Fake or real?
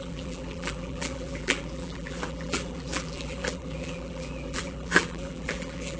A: fake